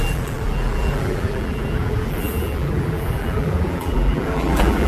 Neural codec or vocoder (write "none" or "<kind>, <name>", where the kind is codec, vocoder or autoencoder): vocoder, BigVGAN v2